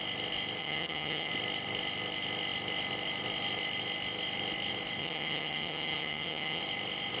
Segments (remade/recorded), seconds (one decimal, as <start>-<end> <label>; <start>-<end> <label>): 0.0-0.6 recorded; 0.6-1.3 remade; 1.3-5.0 recorded; 5.0-6.6 remade; 6.6-7.2 recorded

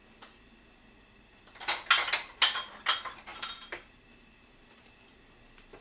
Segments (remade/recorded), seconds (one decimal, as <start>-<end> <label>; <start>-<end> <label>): 0.0-3.3 recorded; 3.3-5.1 remade; 5.1-5.8 recorded

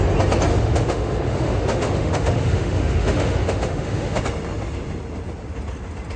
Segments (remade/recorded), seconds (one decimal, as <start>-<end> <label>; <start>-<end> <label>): 0.0-0.5 recorded; 0.5-4.2 remade; 4.2-6.2 recorded

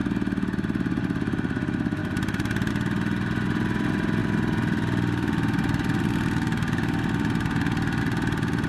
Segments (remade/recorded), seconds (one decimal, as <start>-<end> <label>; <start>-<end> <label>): 0.0-8.7 recorded

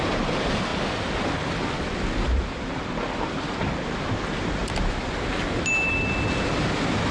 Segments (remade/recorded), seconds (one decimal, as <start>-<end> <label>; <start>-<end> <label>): 0.0-7.1 recorded

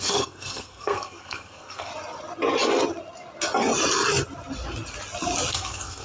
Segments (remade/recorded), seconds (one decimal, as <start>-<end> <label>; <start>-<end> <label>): 0.0-1.9 remade; 1.9-5.5 recorded; 5.5-6.0 remade